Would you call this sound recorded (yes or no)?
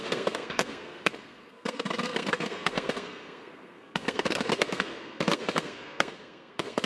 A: no